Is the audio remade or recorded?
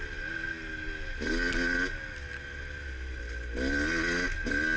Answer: recorded